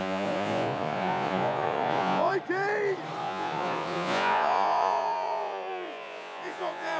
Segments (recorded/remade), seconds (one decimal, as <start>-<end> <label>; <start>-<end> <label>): 0.0-2.3 remade; 2.3-3.2 recorded; 3.2-7.0 remade